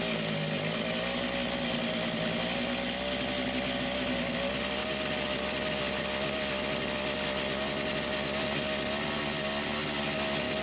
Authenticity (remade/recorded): recorded